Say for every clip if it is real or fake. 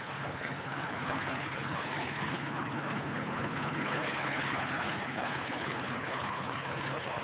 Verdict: fake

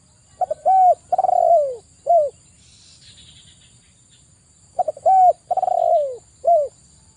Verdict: real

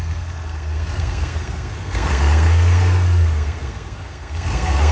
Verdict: fake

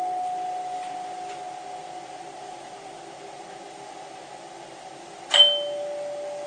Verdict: real